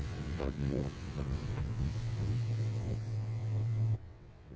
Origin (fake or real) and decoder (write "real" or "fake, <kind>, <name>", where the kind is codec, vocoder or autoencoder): fake, vocoder, WaveNeXt